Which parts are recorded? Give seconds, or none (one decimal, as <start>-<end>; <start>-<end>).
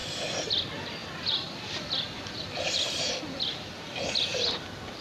0.5-1.0; 4.0-5.0